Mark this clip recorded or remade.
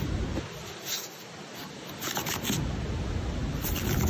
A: recorded